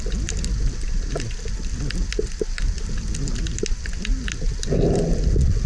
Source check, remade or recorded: recorded